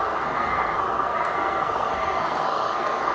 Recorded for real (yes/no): no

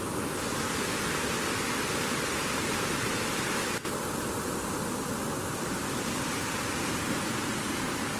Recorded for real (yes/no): no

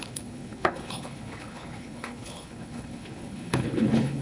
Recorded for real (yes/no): no